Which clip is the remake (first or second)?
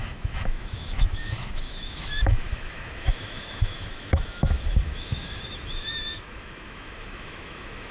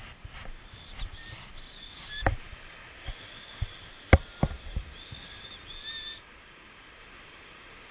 first